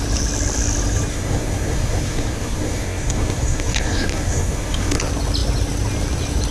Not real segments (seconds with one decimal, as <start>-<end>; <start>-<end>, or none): 1.1-5.0